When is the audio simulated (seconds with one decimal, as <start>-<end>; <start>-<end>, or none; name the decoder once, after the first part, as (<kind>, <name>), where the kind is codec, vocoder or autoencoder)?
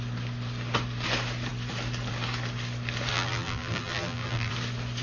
3.1-4.5 (vocoder, BigVGAN v2)